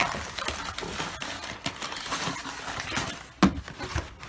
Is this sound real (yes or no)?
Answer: yes